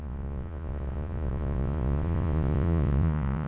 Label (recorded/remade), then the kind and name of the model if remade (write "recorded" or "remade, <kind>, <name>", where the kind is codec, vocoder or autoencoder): remade, vocoder, Vocos